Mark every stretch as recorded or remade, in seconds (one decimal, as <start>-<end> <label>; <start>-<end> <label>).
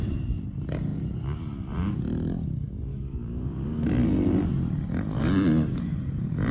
0.0-2.9 recorded; 2.9-3.9 remade; 3.9-6.5 recorded